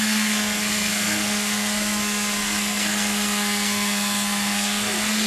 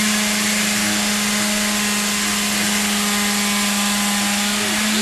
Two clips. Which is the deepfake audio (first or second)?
first